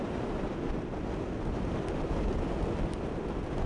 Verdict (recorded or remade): recorded